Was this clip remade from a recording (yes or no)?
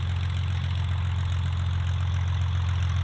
no